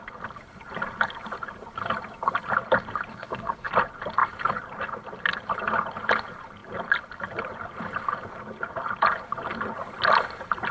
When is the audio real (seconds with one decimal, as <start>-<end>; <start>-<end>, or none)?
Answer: 0.0-3.1; 3.7-10.7